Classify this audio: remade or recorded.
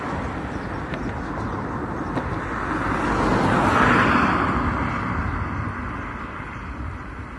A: recorded